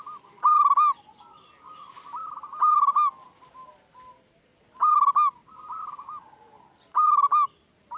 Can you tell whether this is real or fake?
real